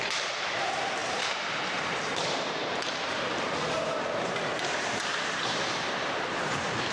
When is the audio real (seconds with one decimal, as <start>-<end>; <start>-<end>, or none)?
none